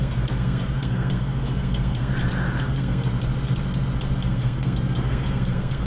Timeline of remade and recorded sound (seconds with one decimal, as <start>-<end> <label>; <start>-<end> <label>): 0.0-2.1 remade; 2.1-2.6 recorded; 2.6-3.1 remade; 3.1-4.3 recorded; 4.3-5.9 remade